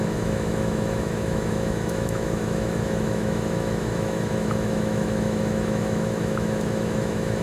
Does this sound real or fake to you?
fake